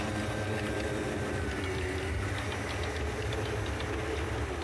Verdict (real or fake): real